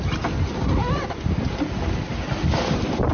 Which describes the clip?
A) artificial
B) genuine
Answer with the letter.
B